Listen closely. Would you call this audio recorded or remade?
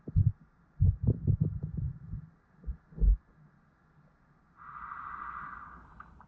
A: recorded